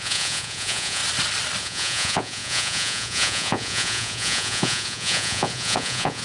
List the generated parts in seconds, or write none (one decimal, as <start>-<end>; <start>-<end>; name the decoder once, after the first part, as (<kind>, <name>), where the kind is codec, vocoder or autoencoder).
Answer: 0.0-1.0 (vocoder, Vocos); 1.6-6.2